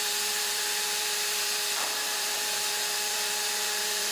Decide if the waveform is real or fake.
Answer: fake